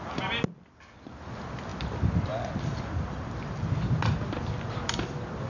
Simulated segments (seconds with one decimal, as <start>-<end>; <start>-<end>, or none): none